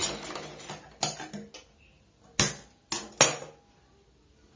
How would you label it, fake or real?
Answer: real